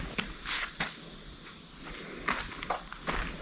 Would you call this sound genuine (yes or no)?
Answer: yes